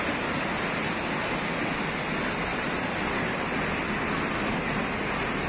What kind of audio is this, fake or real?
real